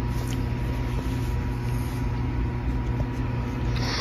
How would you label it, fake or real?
real